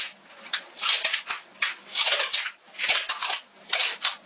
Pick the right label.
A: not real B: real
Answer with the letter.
B